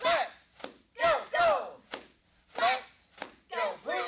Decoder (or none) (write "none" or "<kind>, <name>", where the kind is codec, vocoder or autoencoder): none